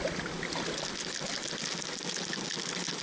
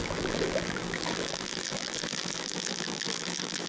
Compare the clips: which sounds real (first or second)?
first